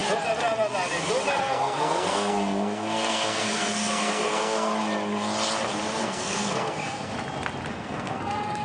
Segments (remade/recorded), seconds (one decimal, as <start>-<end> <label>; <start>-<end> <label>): 0.0-1.4 recorded; 1.4-4.7 remade; 4.7-6.0 recorded; 6.0-7.1 remade; 7.1-7.7 recorded; 7.7-8.6 remade